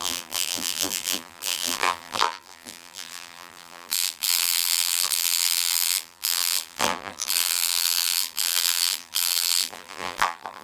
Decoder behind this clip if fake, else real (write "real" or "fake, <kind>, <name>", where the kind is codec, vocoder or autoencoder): fake, vocoder, BigVGAN v2